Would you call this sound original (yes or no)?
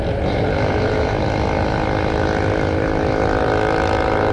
yes